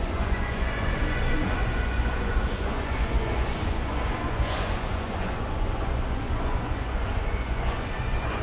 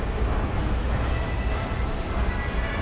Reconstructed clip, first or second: first